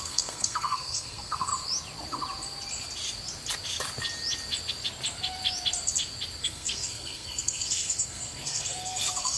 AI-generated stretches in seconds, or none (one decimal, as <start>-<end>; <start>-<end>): 0.0-1.5; 6.4-9.4